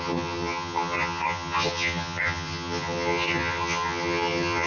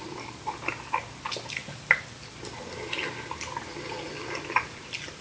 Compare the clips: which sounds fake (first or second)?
first